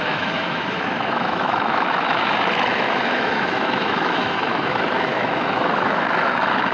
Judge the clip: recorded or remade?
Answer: remade